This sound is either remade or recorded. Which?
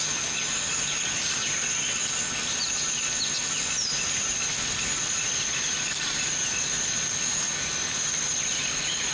recorded